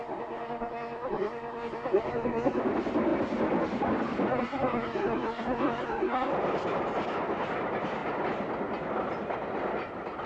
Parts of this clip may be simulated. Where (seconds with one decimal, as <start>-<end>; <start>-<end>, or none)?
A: 0.0-2.6; 4.3-6.3